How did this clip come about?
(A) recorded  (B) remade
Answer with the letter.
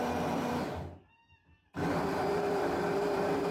B